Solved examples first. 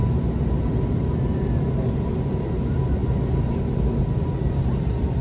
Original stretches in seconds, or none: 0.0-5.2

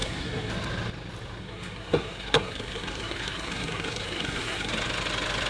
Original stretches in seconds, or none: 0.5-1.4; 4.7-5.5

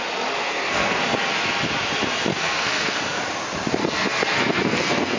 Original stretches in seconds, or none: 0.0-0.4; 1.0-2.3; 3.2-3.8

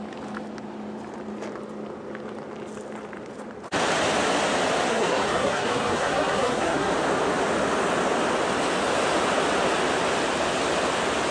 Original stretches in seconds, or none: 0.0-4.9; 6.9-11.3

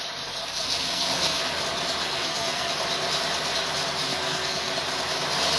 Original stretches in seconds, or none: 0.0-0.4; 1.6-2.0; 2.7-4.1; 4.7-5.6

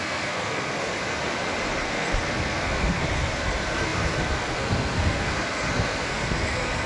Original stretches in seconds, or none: 0.9-1.7